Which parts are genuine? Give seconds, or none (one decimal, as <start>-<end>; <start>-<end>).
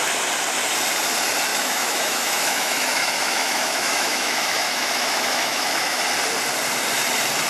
0.0-1.5; 6.0-7.5